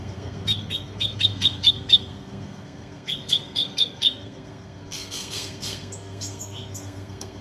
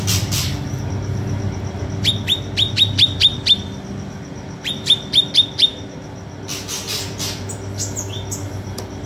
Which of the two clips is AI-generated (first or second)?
first